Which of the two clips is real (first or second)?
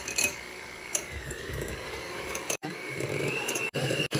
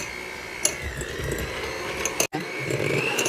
second